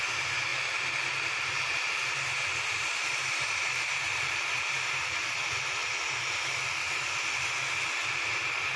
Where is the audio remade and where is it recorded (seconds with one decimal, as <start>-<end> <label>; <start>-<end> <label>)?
0.0-0.5 recorded; 0.5-4.5 remade; 4.5-8.8 recorded

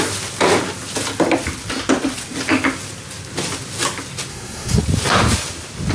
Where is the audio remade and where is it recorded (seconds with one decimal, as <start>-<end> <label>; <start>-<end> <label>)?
0.0-4.3 recorded; 4.3-4.8 remade; 4.8-5.9 recorded

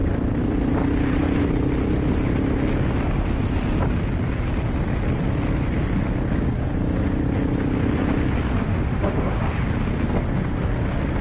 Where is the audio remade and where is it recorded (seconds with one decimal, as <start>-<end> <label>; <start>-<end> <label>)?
0.0-8.6 recorded; 8.6-9.3 remade; 9.3-11.2 recorded

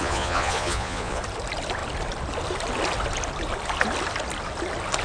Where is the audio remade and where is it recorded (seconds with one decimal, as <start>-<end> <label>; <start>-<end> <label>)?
0.0-1.2 remade; 1.2-5.0 recorded